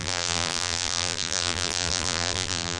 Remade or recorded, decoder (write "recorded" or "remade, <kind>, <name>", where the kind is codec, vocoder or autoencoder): remade, vocoder, BigVGAN v2